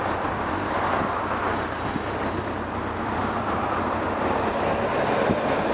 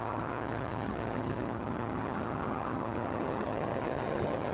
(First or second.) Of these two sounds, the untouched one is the first